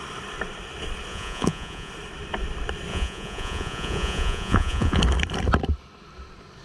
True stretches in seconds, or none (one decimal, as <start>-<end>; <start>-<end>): 0.0-1.1; 1.9-2.9; 5.0-6.6